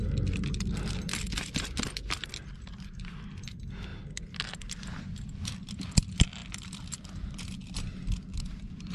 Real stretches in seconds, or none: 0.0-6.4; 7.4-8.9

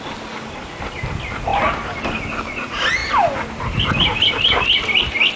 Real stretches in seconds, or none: 0.0-5.4